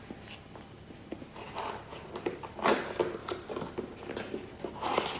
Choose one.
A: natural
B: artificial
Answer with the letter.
A